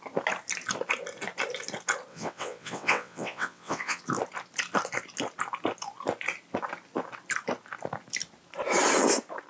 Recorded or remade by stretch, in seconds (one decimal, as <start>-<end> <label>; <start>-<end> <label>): 0.0-2.1 recorded; 2.1-4.0 remade; 4.0-9.5 recorded